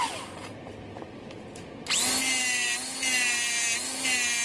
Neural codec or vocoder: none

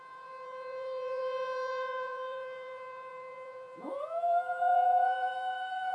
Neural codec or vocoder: vocoder, Vocos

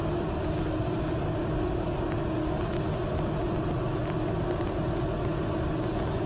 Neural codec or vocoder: none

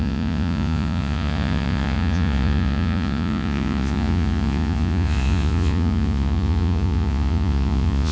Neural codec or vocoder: vocoder, Vocos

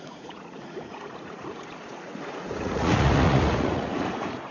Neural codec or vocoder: vocoder, Vocos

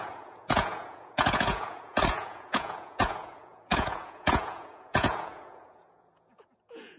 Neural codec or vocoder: vocoder, Vocos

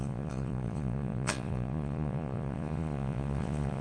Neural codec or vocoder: vocoder, Vocos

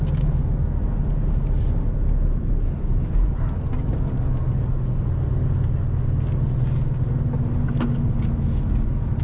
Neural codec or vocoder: none